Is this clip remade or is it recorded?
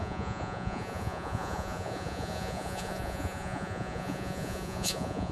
remade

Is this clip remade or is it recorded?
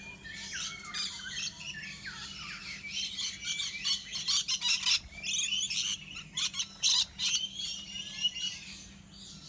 recorded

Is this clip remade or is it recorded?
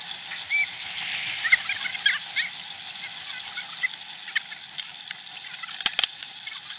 recorded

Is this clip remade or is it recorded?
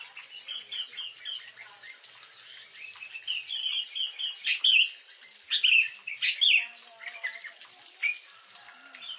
recorded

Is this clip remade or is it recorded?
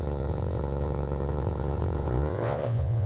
remade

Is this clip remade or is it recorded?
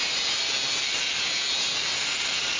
recorded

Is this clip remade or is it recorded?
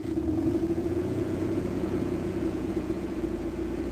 remade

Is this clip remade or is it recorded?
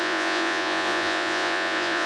remade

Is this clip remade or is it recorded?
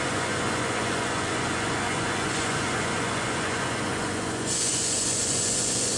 remade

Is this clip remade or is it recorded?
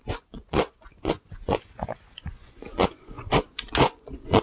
remade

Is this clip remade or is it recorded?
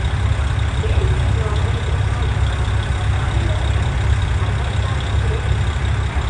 recorded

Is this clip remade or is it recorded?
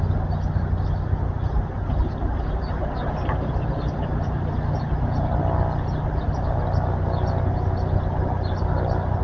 recorded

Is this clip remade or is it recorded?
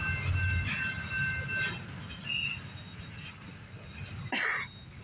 recorded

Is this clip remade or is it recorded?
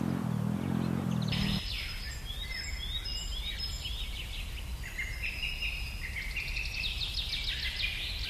recorded